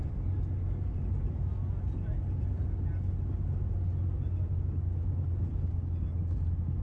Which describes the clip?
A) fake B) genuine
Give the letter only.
B